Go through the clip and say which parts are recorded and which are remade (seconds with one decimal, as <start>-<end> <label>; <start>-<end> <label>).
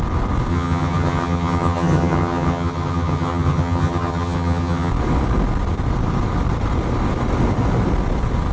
0.0-0.5 recorded; 0.5-4.9 remade; 4.9-8.5 recorded